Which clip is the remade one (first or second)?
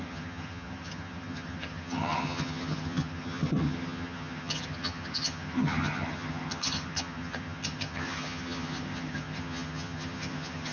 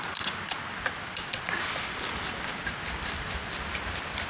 first